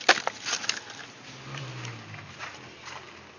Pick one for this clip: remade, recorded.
recorded